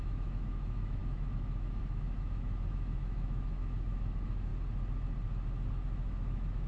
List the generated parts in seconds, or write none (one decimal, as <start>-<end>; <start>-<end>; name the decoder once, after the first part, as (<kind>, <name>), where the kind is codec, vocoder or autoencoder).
0.0-4.5 (autoencoder, DAC-VAE); 5.7-6.7